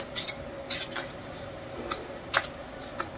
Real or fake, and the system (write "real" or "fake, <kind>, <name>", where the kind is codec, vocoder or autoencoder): real